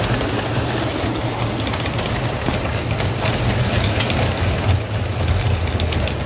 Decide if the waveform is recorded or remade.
recorded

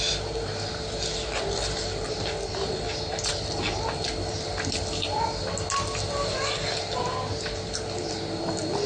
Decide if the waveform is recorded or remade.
recorded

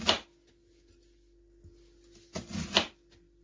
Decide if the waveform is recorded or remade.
recorded